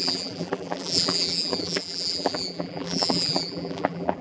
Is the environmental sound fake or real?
fake